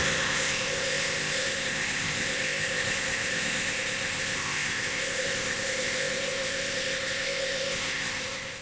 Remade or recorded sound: remade